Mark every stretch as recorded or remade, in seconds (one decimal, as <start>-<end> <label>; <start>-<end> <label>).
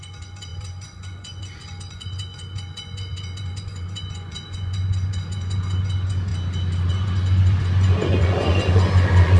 0.0-6.3 remade; 6.3-6.9 recorded; 6.9-9.4 remade